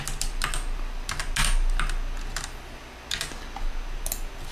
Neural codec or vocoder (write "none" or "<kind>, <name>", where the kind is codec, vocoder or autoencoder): none